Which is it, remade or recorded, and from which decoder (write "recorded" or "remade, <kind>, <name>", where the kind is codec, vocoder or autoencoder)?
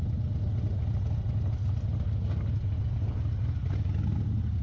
recorded